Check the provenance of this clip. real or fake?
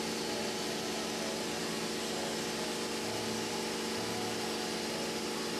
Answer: real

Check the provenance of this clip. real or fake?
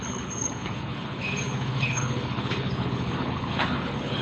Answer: fake